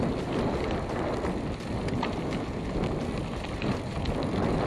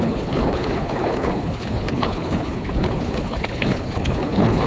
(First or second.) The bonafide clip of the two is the first